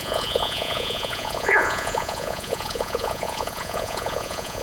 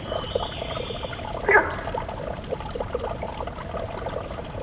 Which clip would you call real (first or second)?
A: second